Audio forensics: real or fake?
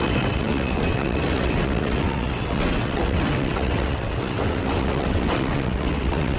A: fake